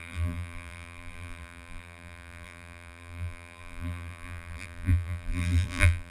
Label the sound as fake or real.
fake